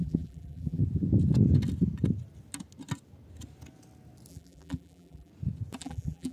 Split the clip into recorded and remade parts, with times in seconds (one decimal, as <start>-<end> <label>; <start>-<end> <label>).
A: 0.0-0.8 remade; 0.8-4.3 recorded; 4.3-5.3 remade; 5.3-5.8 recorded; 5.8-6.3 remade